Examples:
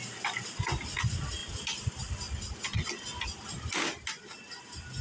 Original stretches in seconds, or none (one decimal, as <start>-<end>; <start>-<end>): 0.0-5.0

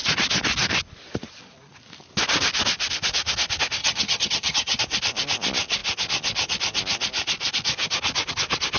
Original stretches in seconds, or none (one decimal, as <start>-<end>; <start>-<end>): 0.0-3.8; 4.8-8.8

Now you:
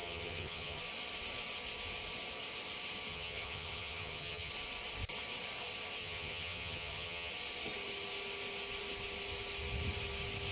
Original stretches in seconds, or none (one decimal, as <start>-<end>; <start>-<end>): 0.8-3.1; 4.5-6.0; 7.3-10.5